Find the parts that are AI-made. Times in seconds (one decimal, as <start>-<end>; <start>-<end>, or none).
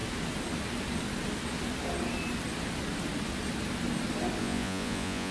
4.4-5.3